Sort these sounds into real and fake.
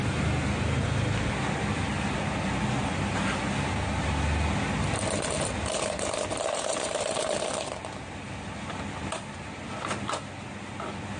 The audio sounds real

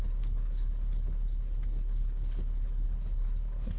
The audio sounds fake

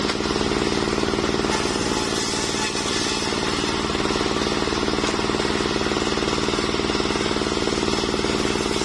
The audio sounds real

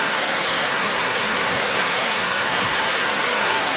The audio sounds fake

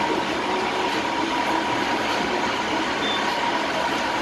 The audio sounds fake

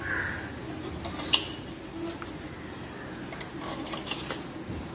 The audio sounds real